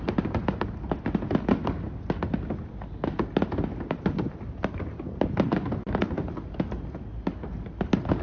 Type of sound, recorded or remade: recorded